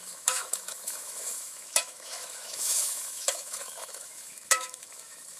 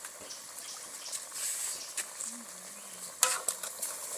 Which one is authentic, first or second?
second